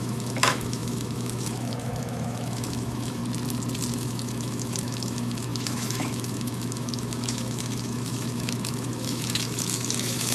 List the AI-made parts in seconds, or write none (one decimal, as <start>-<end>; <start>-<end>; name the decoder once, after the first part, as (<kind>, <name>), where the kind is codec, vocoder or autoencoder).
0.0-3.2 (autoencoder, DAC-VAE); 3.9-10.3